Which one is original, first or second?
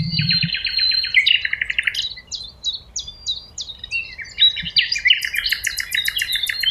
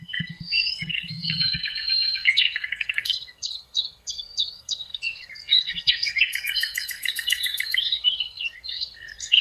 first